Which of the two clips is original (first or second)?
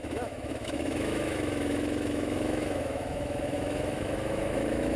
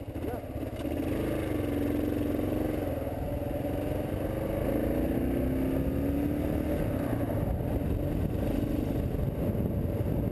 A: second